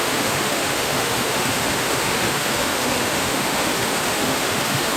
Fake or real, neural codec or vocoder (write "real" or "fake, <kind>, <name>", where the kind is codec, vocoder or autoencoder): fake, autoencoder, DAC-VAE